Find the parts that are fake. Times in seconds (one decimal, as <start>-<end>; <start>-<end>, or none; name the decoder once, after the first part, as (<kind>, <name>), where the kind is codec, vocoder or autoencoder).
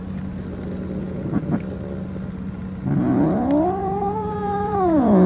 1.0-1.6 (vocoder, Vocos); 3.8-5.3